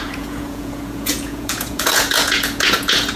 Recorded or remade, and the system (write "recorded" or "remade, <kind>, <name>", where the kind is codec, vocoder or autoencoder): remade, vocoder, Vocos